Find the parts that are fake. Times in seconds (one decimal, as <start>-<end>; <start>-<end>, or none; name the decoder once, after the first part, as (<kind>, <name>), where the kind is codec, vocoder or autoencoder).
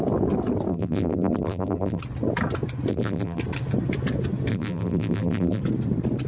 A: 0.7-2.0 (vocoder, BigVGAN v2); 2.9-3.4; 4.5-5.6